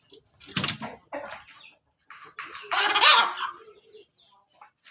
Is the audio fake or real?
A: real